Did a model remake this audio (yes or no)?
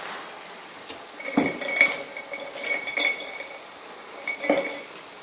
no